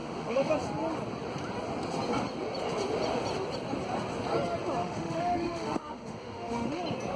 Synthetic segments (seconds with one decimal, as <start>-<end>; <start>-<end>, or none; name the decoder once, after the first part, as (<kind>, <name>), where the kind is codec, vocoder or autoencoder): 0.0-0.5 (autoencoder, DAC-VAE); 4.8-6.8